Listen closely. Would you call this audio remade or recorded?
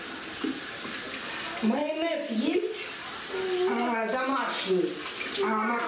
recorded